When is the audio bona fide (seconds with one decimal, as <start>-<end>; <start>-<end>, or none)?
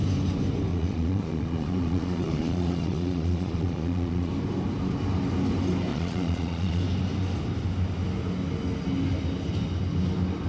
0.0-0.7; 4.3-5.9; 6.8-10.5